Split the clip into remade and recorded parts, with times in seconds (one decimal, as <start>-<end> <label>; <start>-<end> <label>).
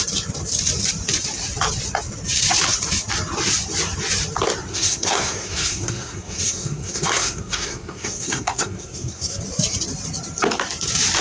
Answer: 0.0-4.7 recorded; 4.7-9.4 remade; 9.4-11.2 recorded